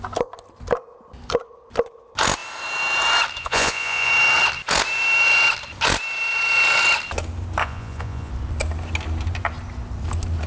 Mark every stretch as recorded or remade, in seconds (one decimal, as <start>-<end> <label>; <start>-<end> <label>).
0.0-3.4 recorded; 3.4-4.1 remade; 4.1-7.6 recorded; 7.6-8.3 remade; 8.3-10.5 recorded